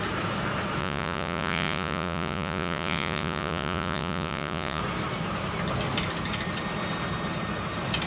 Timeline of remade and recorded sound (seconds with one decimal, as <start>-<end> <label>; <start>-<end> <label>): 0.0-0.8 recorded; 0.8-4.8 remade; 4.8-8.1 recorded